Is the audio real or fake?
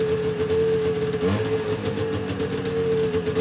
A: real